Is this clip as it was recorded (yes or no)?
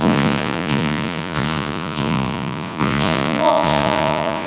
no